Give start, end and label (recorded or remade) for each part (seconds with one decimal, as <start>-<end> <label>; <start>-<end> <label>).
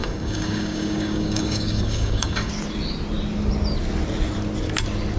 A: 0.0-2.5 remade; 2.5-5.2 recorded